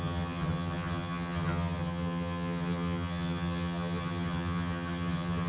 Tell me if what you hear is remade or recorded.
remade